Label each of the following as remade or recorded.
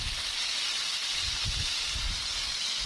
recorded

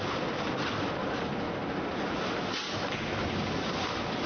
recorded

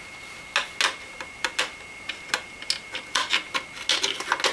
recorded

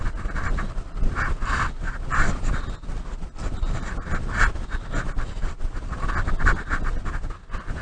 recorded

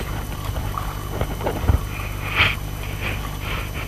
recorded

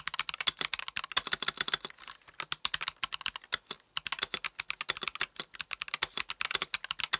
recorded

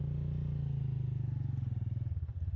recorded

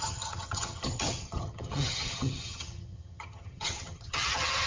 remade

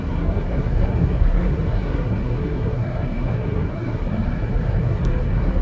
remade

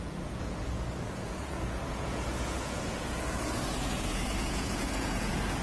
remade